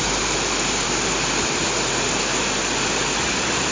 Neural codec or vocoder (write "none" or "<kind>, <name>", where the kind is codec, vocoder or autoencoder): none